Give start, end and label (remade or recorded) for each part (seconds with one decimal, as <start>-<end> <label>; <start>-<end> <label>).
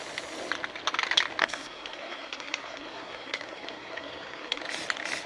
0.0-1.4 recorded; 1.4-4.6 remade; 4.6-5.3 recorded